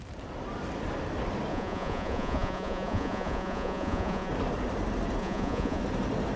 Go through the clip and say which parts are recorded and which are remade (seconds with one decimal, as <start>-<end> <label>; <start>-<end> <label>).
0.0-1.5 recorded; 1.5-4.3 remade; 4.3-5.2 recorded; 5.2-5.8 remade; 5.8-6.4 recorded